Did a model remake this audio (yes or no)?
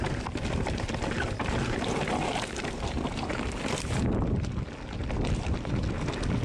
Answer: no